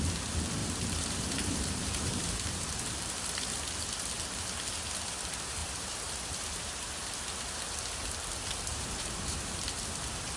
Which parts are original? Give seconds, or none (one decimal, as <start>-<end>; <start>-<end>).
0.0-0.6; 3.1-5.6; 7.1-8.7; 9.6-10.4